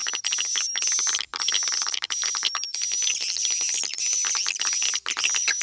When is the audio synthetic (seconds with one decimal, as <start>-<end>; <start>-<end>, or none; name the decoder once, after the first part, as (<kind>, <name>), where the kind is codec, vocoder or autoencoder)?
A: none